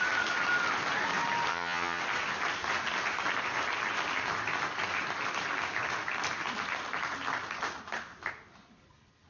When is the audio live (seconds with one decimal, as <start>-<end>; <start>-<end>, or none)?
0.0-1.5; 2.0-9.3